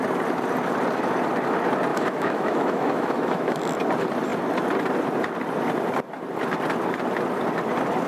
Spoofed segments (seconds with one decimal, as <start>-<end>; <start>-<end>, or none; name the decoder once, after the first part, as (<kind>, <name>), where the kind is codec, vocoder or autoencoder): 1.9-3.6 (autoencoder, DAC-VAE)